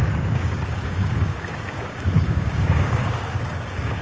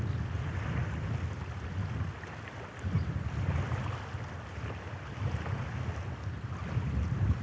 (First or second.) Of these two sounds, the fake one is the first